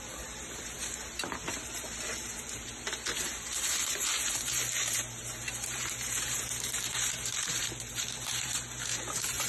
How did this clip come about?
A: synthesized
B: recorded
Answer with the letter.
A